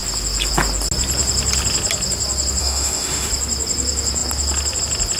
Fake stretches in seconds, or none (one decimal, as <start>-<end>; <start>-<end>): 2.6-3.3